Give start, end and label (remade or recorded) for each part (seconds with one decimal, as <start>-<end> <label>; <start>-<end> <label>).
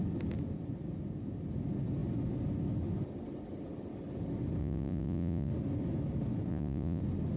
0.0-4.6 recorded; 4.6-5.5 remade; 5.5-6.5 recorded; 6.5-7.0 remade; 7.0-7.4 recorded